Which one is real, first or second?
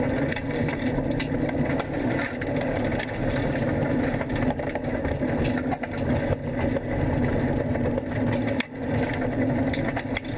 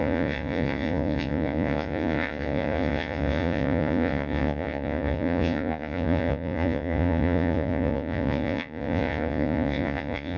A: first